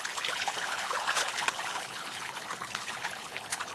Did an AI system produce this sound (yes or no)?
yes